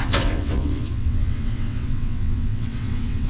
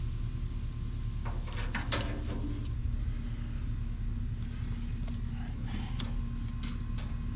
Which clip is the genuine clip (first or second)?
second